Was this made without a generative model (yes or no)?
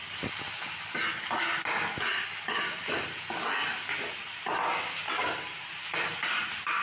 yes